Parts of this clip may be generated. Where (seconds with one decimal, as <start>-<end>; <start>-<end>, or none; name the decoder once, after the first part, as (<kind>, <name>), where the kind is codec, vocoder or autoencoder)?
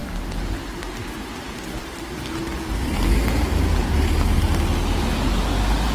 3.8-4.4 (vocoder, BigVGAN v2)